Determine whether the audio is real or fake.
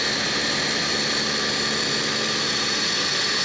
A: real